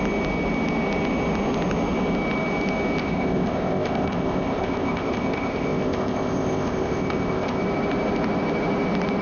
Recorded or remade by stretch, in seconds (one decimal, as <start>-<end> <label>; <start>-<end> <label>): 0.0-3.0 recorded; 3.0-7.6 remade; 7.6-9.2 recorded